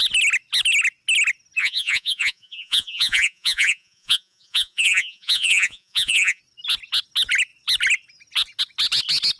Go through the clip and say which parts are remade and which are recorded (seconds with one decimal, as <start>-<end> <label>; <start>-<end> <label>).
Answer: 0.0-1.6 recorded; 1.6-6.4 remade; 6.4-9.4 recorded